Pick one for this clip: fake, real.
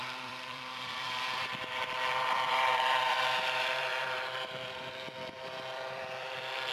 fake